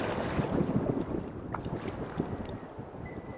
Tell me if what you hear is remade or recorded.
recorded